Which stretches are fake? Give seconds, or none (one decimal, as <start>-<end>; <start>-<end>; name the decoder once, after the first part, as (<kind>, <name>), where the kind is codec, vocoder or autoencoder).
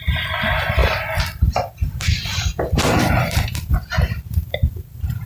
1.8-5.3 (vocoder, BigVGAN v2)